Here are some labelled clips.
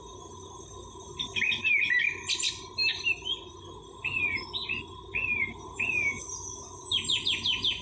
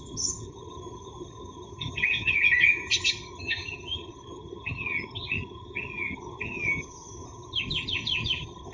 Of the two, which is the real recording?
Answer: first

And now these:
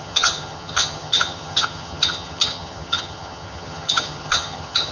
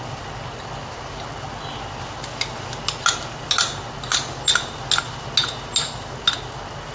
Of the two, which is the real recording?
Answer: second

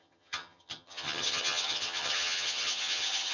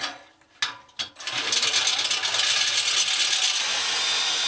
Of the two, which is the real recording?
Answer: second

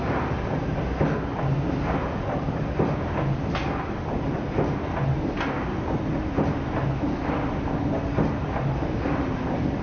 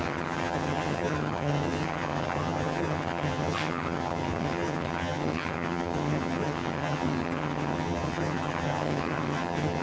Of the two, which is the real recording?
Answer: first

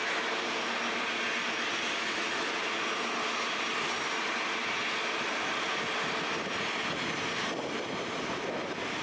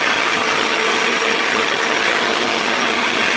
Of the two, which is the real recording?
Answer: first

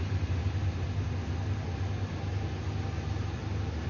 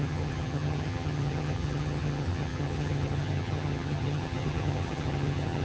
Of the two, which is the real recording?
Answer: first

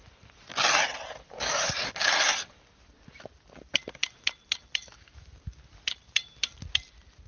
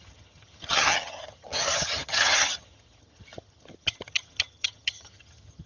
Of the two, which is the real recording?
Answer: first